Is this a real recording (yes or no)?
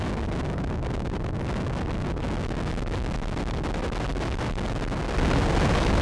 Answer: yes